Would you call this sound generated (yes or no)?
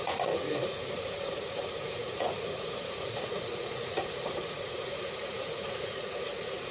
yes